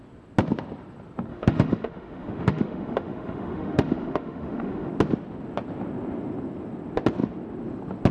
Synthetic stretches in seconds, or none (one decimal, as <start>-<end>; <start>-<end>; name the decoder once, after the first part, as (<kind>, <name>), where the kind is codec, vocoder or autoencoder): 1.3-4.9 (autoencoder, DAC-VAE)